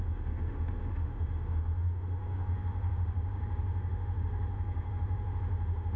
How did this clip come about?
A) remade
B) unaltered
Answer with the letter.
A